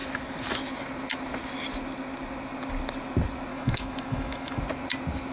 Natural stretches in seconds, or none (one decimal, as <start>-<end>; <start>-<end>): 0.0-3.5; 4.6-5.3